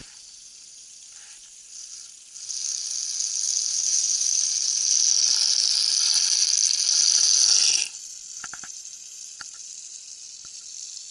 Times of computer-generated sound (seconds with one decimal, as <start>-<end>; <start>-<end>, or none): 3.7-4.4